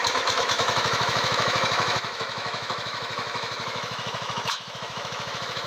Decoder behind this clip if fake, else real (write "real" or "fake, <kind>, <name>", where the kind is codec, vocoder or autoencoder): fake, autoencoder, DAC-VAE